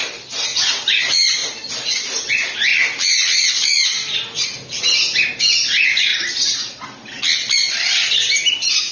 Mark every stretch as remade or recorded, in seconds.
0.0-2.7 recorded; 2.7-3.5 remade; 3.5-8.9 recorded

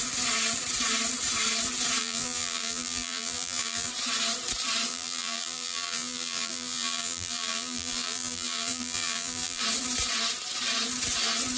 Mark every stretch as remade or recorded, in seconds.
0.0-2.0 recorded; 2.0-3.9 remade; 3.9-4.9 recorded; 4.9-9.6 remade; 9.6-11.6 recorded

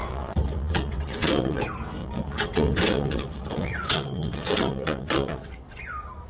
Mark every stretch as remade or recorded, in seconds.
0.0-1.6 remade; 1.6-2.0 recorded; 2.0-5.8 remade; 5.8-6.3 recorded

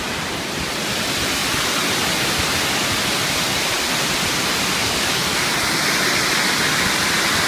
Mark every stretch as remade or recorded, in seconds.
0.0-4.8 recorded; 4.8-5.5 remade; 5.5-7.5 recorded